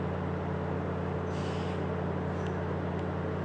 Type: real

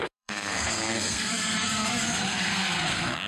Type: fake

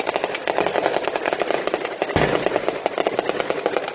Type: real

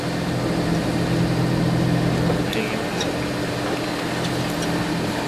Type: real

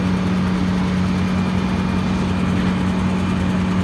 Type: real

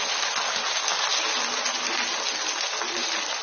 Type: real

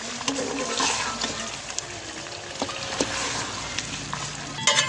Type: real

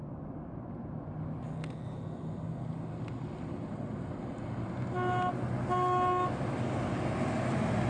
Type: real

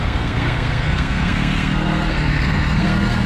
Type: fake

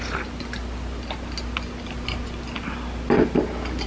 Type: real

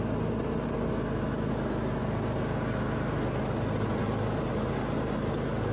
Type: real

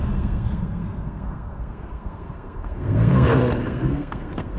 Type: fake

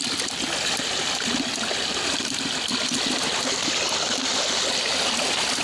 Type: fake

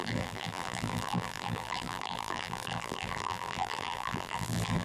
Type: fake